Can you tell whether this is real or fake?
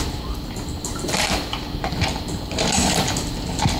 real